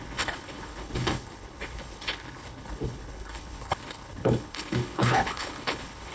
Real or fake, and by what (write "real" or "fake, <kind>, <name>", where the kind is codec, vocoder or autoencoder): fake, codec, HILCodec